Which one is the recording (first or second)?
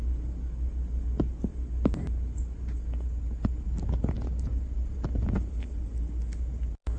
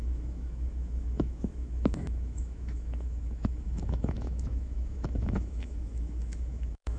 first